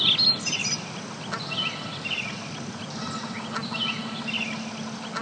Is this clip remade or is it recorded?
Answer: recorded